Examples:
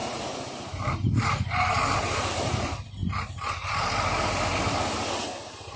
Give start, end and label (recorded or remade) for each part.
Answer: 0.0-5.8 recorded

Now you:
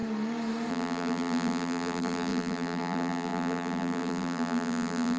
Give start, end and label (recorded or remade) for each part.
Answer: 0.0-0.7 recorded; 0.7-5.2 remade

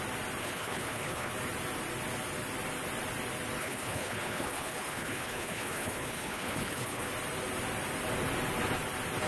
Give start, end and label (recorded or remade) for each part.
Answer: 0.0-0.4 recorded; 0.4-1.3 remade; 1.3-3.6 recorded; 3.6-7.1 remade; 7.1-9.3 recorded

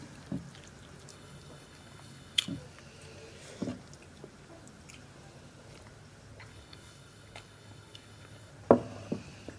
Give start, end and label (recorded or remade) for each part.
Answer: 0.0-1.1 recorded; 1.1-2.6 remade; 2.6-6.5 recorded; 6.5-8.5 remade; 8.5-9.6 recorded

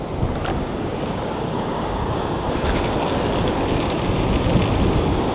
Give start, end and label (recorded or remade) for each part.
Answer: 0.0-0.5 recorded; 0.5-2.5 remade; 2.5-5.3 recorded

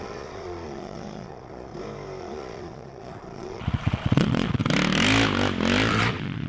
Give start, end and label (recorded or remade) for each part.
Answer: 0.0-1.7 remade; 1.7-2.2 recorded; 2.2-4.6 remade; 4.6-5.9 recorded; 5.9-6.5 remade